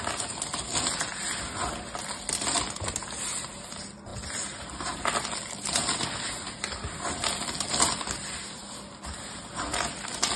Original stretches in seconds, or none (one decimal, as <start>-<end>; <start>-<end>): 0.0-10.4